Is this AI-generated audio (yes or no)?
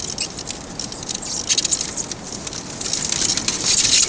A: no